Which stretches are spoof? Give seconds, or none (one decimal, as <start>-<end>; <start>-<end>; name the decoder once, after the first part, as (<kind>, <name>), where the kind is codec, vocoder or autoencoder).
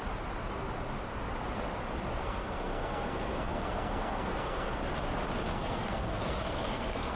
2.2-4.8 (codec, SNAC); 5.5-7.2